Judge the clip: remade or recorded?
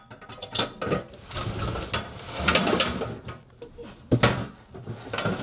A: recorded